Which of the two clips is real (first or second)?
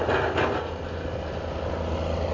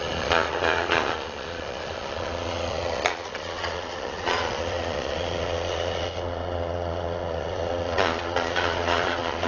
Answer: first